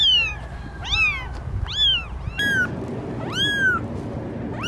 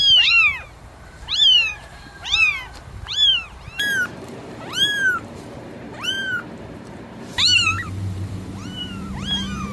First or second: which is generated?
second